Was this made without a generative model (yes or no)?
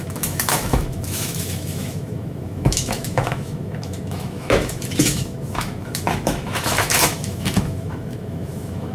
no